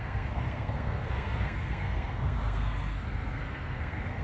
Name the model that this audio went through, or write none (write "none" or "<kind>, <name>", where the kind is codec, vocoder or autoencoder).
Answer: codec, SNAC